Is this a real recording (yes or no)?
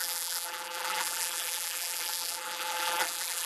no